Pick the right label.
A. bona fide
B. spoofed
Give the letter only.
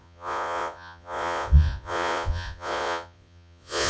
B